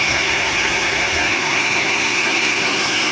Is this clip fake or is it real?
fake